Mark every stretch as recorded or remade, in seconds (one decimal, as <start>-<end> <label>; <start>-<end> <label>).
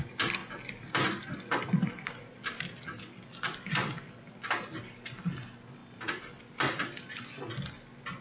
0.0-0.4 recorded; 0.4-4.2 remade; 4.2-5.8 recorded; 5.8-7.2 remade; 7.2-8.2 recorded